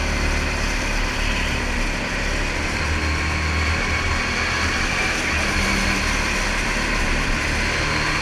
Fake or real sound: real